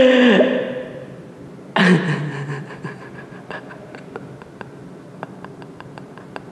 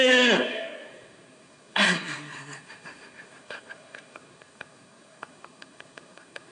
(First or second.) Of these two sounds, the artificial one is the second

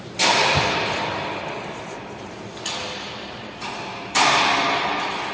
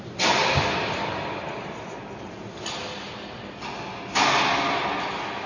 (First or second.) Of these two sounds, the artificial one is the first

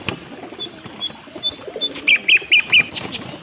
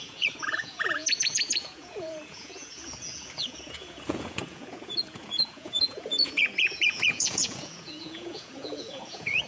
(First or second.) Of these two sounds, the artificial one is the second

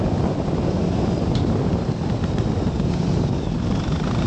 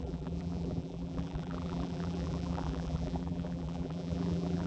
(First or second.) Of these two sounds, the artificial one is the second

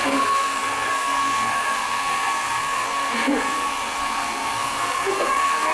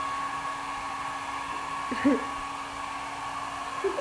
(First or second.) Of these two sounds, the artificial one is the first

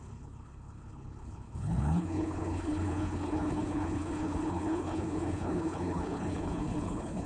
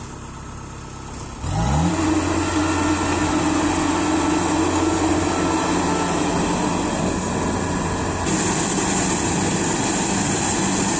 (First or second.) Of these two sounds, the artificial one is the first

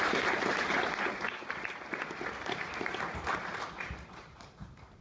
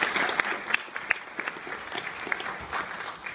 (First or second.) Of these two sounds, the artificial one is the first